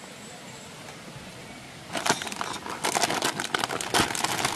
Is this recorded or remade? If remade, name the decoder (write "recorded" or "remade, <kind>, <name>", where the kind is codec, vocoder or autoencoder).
recorded